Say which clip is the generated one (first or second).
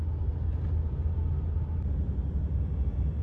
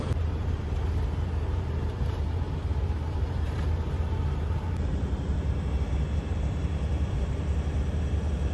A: second